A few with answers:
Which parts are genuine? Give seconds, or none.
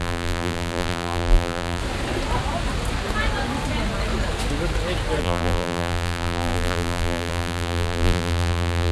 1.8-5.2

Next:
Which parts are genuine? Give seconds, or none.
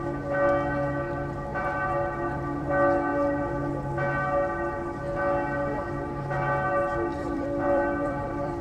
0.0-1.5; 2.7-7.1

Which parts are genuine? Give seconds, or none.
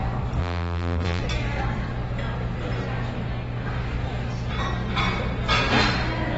0.0-0.4; 1.2-6.4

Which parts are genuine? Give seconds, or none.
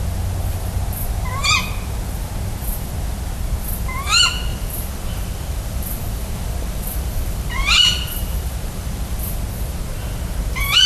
0.0-4.5; 9.4-10.9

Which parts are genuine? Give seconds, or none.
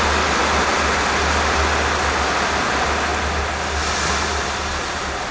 0.0-5.3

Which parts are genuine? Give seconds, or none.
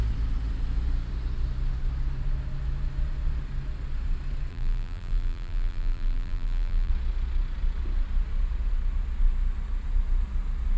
0.0-4.5; 6.9-10.8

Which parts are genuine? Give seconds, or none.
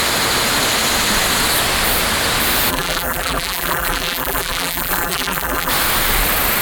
0.0-2.7; 5.7-6.6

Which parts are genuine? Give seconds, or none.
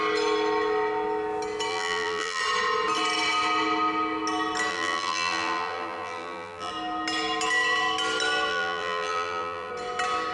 0.0-1.7; 2.4-4.7; 6.7-8.5; 9.7-10.3